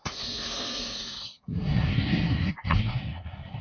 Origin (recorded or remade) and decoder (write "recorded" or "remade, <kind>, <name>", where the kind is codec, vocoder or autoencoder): remade, codec, SNAC